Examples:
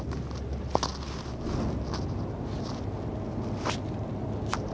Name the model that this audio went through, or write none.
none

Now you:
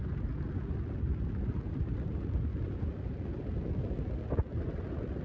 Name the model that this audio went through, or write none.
none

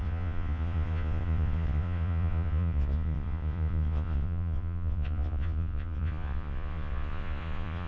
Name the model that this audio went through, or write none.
vocoder, Vocos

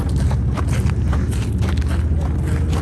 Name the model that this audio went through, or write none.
none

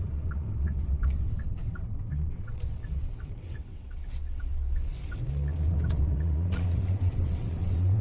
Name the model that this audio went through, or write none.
vocoder, WaveNeXt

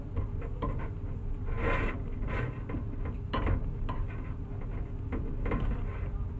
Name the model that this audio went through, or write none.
none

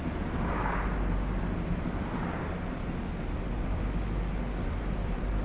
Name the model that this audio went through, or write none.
none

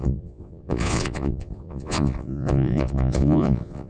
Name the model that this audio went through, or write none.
vocoder, Vocos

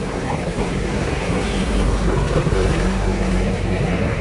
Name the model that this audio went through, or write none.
codec, SNAC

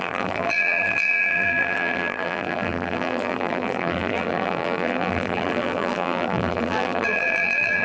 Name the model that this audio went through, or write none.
vocoder, BigVGAN v2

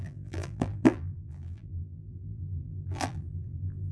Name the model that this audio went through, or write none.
vocoder, BigVGAN v2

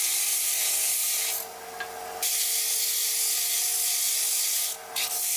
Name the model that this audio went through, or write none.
none